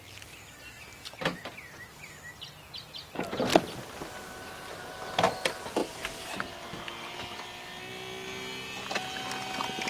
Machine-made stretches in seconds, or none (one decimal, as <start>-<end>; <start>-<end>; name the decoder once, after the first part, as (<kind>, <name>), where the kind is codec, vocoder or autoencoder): none